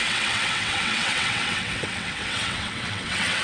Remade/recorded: remade